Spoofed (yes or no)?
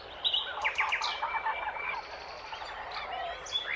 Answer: no